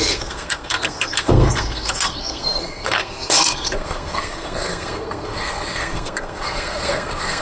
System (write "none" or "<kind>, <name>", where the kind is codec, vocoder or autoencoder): codec, SNAC